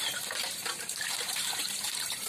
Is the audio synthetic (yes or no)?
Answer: yes